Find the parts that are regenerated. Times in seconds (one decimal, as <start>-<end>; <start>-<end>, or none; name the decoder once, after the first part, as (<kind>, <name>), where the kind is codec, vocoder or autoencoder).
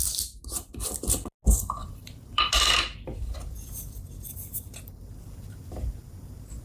1.8-5.8 (vocoder, BigVGAN v2)